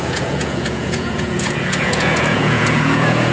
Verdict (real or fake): fake